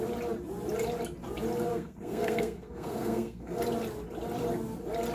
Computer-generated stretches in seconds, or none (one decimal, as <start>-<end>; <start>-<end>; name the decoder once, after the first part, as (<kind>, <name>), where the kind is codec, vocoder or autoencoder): 1.7-3.6 (codec, SNAC)